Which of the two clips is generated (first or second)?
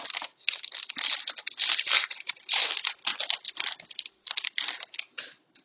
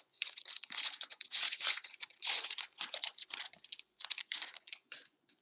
second